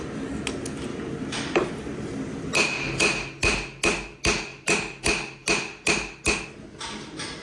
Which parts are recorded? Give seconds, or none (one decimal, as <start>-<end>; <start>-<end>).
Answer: 0.0-0.9; 2.3-7.4